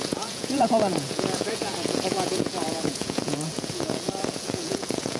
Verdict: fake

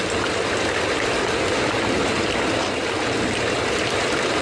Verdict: real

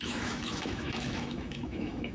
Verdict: fake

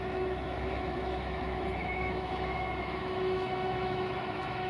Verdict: fake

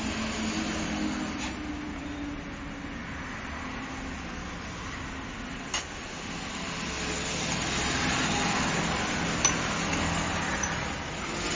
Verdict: real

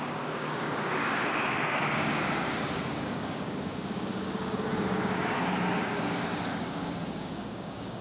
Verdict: fake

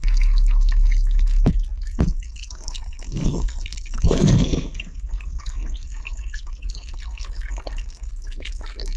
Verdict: fake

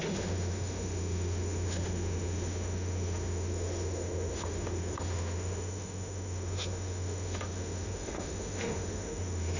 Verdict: fake